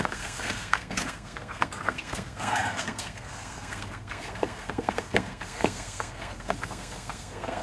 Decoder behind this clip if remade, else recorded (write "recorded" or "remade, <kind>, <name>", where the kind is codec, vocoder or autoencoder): remade, codec, SNAC